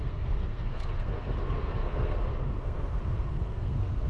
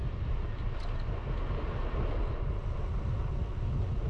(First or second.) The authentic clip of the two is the second